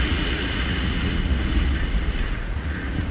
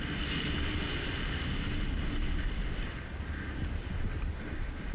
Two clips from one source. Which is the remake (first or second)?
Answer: first